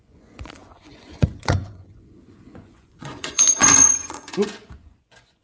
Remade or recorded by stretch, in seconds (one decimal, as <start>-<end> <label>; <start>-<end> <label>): 0.0-5.4 remade